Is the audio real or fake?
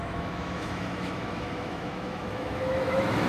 fake